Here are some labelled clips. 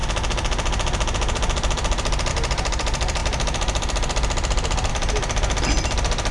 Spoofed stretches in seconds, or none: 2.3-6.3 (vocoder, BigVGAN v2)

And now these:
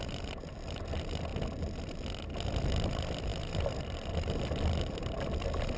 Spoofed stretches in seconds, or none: 0.0-1.3 (vocoder, BigVGAN v2); 2.9-5.8

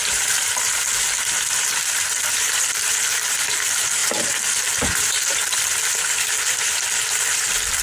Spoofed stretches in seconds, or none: 0.0-7.8 (vocoder, BigVGAN v2)

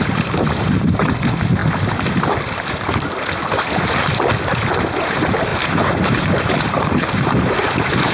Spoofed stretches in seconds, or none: 0.0-1.6 (vocoder, BigVGAN v2); 4.8-8.1

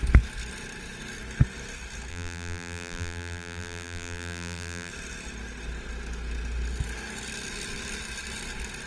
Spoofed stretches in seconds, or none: 2.1-4.9 (vocoder, BigVGAN v2)

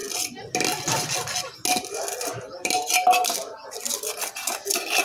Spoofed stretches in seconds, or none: 2.3-3.7 (vocoder, BigVGAN v2)